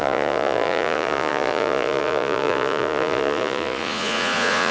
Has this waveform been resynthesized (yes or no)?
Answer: yes